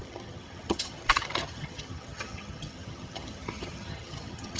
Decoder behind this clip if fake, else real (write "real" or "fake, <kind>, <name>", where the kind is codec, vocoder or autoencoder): fake, vocoder, HiFi-GAN